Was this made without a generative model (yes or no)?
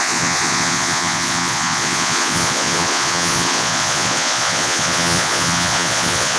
no